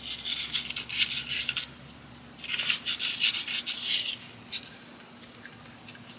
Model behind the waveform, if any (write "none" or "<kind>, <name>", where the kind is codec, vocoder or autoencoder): none